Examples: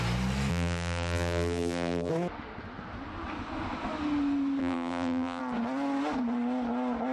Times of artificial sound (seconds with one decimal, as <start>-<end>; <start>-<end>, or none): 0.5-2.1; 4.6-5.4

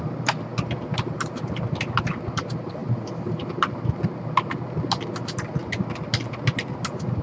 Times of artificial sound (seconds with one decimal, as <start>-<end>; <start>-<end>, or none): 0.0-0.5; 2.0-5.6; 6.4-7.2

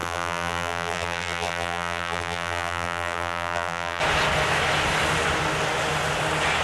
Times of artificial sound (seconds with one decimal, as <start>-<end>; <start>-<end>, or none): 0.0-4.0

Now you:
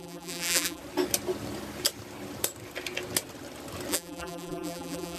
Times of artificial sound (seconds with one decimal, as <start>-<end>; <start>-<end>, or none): 0.0-0.8; 3.9-5.2

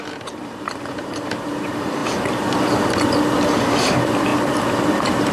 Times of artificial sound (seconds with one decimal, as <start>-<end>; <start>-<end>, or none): 0.0-2.0; 3.2-4.3